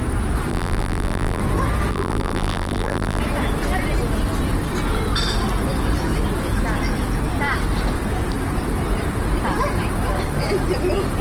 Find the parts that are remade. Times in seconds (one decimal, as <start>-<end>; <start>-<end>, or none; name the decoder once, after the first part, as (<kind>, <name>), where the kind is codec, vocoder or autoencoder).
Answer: 0.5-1.4 (vocoder, BigVGAN v2); 1.9-3.2